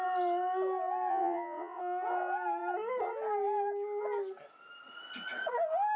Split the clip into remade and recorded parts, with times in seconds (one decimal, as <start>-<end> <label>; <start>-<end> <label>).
0.0-1.1 recorded; 1.1-1.8 remade; 1.8-6.0 recorded